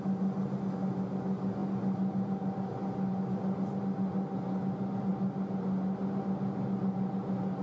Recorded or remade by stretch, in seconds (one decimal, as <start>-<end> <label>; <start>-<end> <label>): 0.0-7.6 recorded